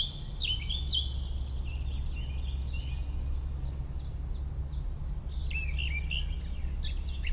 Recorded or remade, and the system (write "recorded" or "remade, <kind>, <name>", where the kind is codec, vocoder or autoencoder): recorded